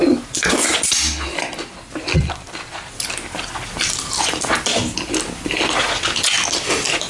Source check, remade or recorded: recorded